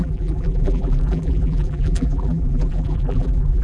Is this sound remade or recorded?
remade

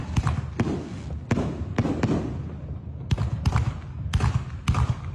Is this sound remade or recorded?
recorded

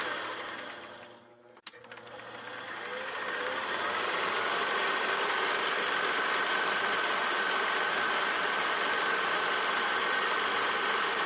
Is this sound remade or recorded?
recorded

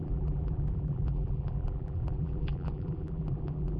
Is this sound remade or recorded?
remade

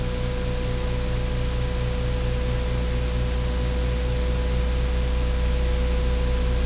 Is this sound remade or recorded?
recorded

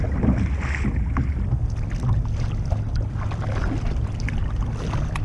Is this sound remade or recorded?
recorded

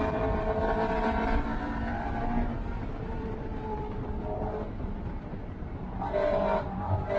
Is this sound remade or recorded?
remade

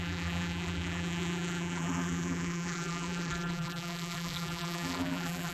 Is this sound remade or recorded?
remade